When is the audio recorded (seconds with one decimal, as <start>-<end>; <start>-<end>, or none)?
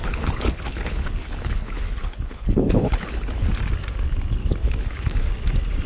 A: 3.5-4.4; 5.3-5.9